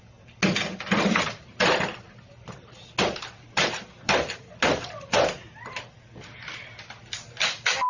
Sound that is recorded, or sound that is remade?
recorded